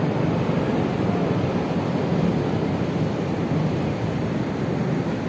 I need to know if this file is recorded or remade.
recorded